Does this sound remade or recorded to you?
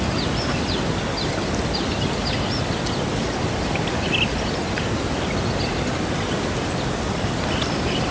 recorded